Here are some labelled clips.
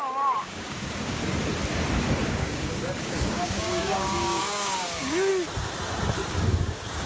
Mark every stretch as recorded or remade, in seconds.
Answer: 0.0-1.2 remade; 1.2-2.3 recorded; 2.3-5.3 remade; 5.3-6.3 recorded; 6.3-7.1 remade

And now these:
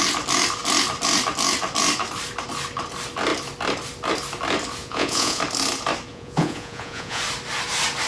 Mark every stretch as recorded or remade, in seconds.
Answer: 0.0-4.8 recorded; 4.8-5.4 remade; 5.4-6.1 recorded; 6.1-7.2 remade; 7.2-8.1 recorded

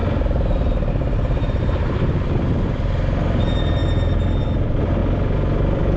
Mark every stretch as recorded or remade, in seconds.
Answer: 0.0-0.9 recorded; 0.9-3.8 remade; 3.8-4.4 recorded; 4.4-5.0 remade; 5.0-6.0 recorded

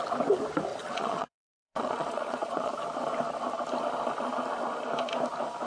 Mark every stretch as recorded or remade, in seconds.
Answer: 0.0-0.7 recorded; 0.7-2.7 remade; 2.7-5.7 recorded

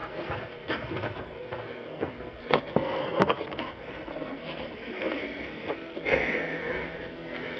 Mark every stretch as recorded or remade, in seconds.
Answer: 0.0-7.6 remade

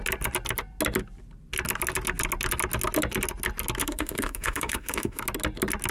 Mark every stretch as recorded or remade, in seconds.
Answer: 0.0-3.8 recorded; 3.8-5.2 remade; 5.2-5.9 recorded

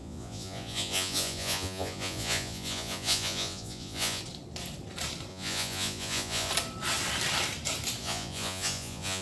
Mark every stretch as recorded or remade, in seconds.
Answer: 0.0-4.2 remade; 4.2-5.3 recorded; 5.3-6.5 remade; 6.5-8.0 recorded; 8.0-9.2 remade